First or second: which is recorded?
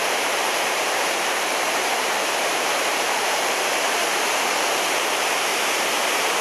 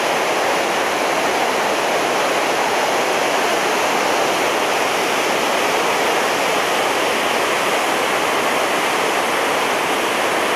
second